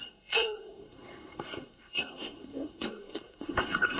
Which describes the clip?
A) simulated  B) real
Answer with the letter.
A